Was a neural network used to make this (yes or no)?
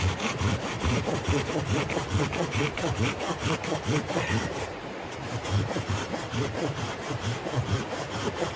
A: yes